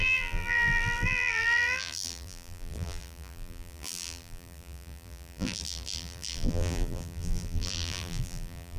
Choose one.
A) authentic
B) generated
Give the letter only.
B